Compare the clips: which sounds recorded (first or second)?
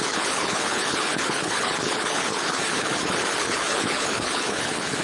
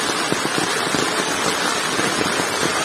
second